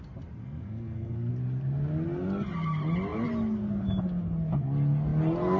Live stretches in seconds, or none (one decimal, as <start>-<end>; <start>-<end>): 0.0-0.4; 1.3-5.6